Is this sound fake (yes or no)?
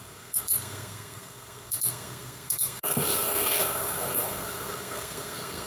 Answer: yes